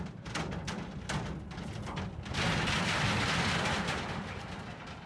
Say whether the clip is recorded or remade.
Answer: recorded